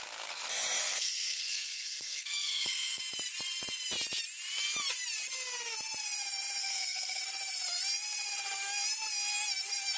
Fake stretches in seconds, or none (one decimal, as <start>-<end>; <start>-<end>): 0.8-3.0; 6.6-7.2